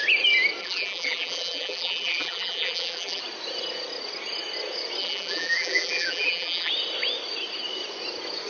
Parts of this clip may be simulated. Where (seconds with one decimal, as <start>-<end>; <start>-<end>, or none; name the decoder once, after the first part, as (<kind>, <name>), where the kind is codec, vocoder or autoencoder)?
0.6-3.2 (vocoder, BigVGAN v2); 5.0-6.7